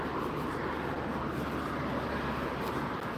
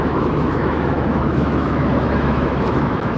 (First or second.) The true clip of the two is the first